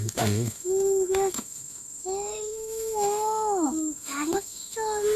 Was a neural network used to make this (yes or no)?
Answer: yes